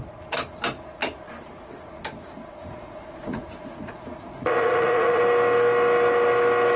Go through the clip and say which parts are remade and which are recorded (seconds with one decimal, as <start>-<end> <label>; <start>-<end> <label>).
0.0-2.6 recorded; 2.6-5.2 remade; 5.2-6.8 recorded